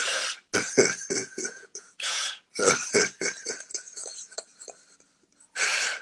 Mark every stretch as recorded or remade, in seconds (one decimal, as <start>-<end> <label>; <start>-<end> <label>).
0.0-1.2 recorded; 1.2-2.4 remade; 2.4-6.0 recorded